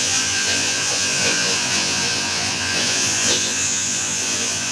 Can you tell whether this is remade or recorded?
remade